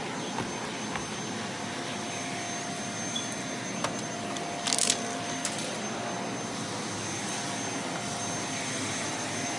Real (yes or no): yes